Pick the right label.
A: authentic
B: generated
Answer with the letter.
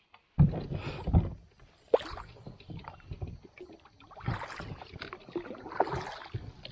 A